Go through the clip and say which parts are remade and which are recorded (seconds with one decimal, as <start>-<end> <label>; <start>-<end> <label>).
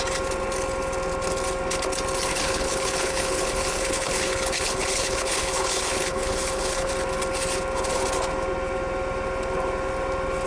0.0-2.3 recorded; 2.3-6.9 remade; 6.9-10.5 recorded